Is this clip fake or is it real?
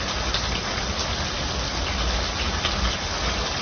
real